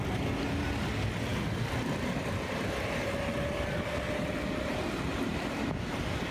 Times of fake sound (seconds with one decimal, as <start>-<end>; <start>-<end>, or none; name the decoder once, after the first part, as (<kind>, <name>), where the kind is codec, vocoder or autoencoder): none